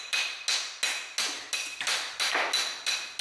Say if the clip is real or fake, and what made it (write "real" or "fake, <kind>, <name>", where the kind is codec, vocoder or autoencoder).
real